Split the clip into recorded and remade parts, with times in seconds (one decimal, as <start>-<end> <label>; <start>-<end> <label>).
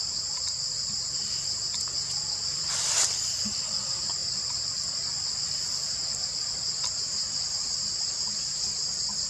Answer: 0.0-4.2 recorded; 4.2-6.5 remade; 6.5-9.3 recorded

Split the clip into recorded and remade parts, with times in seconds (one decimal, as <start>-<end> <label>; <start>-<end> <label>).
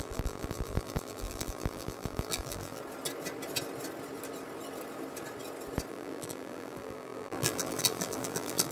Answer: 0.0-2.8 remade; 2.8-5.9 recorded; 5.9-8.7 remade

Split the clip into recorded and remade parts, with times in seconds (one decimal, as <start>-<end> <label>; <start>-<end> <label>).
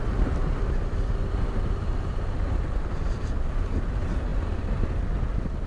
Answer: 0.0-5.7 recorded